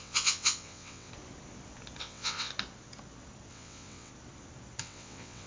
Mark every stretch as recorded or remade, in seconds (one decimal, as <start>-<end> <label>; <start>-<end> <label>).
0.0-1.1 remade; 1.1-2.0 recorded; 2.0-2.5 remade; 2.5-3.5 recorded; 3.5-4.1 remade; 4.1-4.8 recorded; 4.8-5.5 remade